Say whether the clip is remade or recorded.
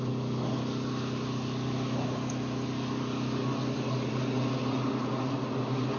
recorded